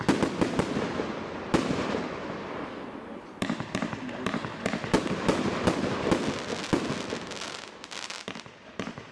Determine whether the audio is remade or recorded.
recorded